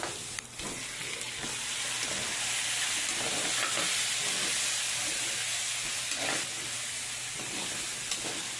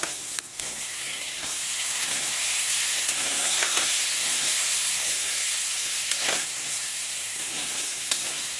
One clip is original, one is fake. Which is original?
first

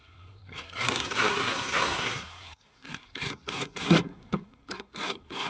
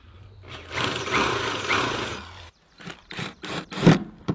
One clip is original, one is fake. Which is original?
second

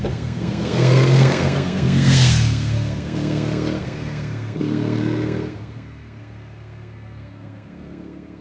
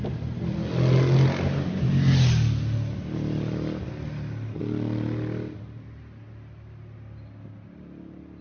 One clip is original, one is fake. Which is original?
second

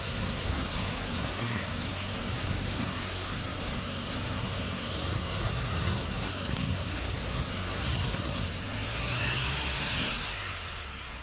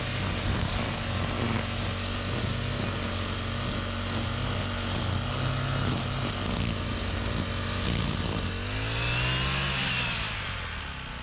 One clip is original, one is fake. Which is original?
second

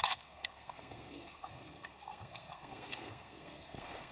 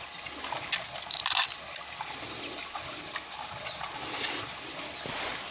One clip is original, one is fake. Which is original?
second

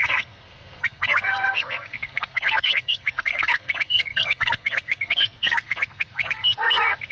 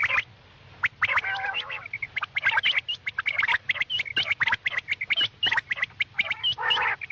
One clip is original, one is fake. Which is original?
second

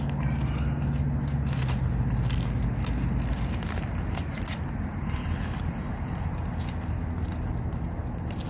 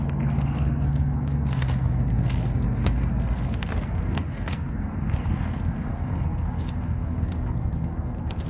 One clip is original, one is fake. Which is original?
first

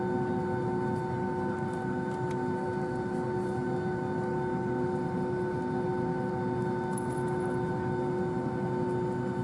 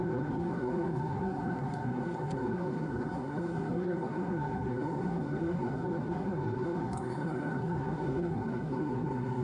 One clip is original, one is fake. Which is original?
first